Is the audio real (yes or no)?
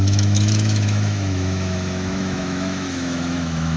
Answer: no